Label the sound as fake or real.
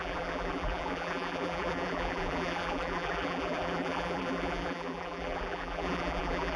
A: fake